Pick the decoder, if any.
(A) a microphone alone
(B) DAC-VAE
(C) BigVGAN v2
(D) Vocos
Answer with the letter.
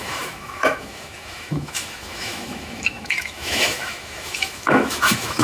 B